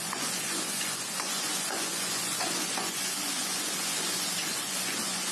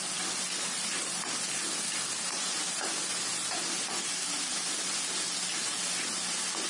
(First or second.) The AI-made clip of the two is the first